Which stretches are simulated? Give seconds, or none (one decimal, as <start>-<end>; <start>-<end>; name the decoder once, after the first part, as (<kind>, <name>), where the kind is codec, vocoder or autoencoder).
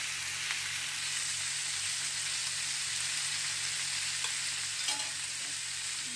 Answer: none